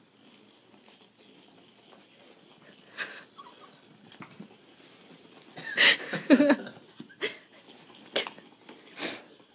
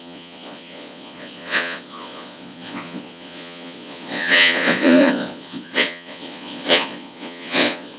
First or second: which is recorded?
first